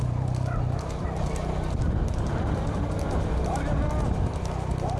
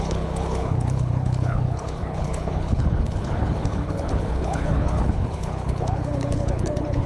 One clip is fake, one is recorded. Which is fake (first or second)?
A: second